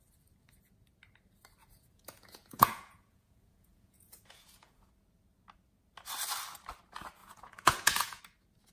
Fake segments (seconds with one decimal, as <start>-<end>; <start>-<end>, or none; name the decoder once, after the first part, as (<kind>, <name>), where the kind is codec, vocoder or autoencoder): 1.6-4.9 (vocoder, Vocos); 7.2-8.2